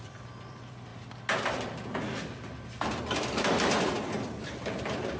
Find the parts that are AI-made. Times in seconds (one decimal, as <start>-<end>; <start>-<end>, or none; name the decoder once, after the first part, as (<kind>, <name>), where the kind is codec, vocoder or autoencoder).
0.0-0.9 (vocoder, BigVGAN v2); 3.0-5.2